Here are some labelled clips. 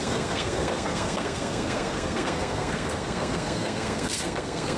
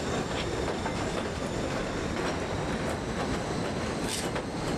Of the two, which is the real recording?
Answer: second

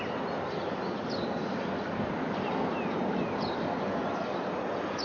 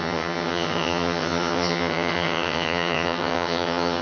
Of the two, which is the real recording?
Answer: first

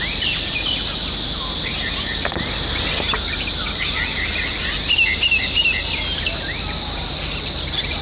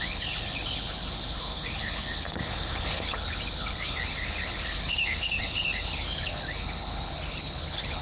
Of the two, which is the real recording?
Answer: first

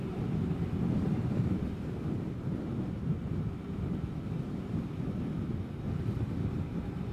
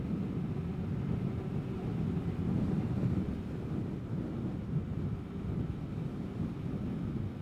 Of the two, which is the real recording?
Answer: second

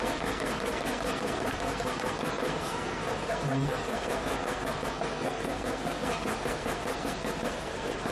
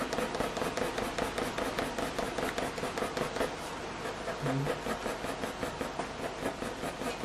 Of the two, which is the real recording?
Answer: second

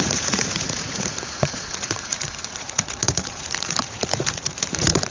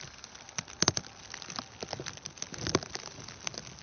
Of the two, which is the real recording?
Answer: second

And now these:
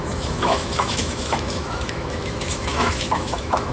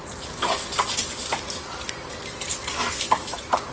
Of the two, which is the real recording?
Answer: second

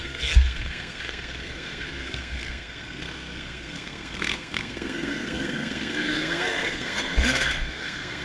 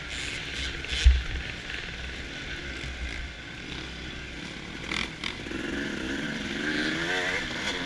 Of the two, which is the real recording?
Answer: second